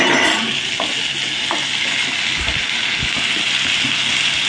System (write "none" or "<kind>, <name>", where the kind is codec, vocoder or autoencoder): none